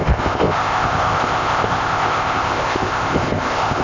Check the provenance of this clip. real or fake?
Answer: fake